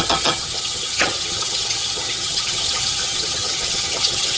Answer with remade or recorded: remade